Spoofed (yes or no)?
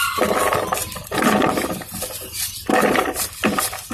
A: yes